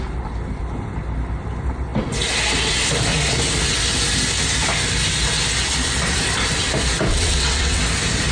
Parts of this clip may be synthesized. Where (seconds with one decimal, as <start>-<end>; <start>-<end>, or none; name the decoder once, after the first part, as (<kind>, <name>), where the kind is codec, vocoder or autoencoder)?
7.1-7.8 (vocoder, WaveNeXt)